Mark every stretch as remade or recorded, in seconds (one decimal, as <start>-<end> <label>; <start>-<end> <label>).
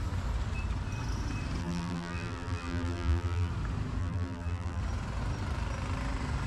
0.0-1.6 recorded; 1.6-3.5 remade; 3.5-4.0 recorded; 4.0-4.8 remade; 4.8-6.5 recorded